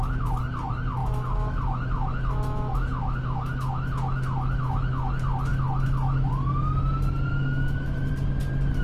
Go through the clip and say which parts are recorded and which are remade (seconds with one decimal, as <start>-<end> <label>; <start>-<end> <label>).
0.0-1.0 recorded; 1.0-5.1 remade; 5.1-5.5 recorded; 5.5-6.3 remade; 6.3-7.3 recorded; 7.3-8.1 remade; 8.1-8.8 recorded